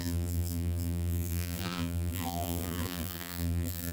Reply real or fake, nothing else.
fake